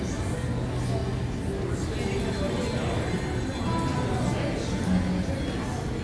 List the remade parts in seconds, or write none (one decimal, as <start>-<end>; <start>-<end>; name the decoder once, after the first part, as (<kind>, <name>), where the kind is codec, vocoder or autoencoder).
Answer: none